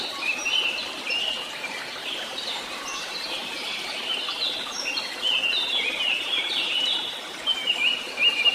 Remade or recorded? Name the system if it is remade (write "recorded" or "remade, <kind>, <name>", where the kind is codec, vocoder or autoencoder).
remade, vocoder, BigVGAN v2